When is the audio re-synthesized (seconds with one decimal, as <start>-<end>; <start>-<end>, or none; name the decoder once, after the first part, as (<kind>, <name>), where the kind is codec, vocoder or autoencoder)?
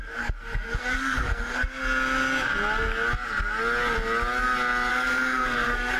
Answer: 0.0-1.8 (codec, SNAC); 4.9-6.0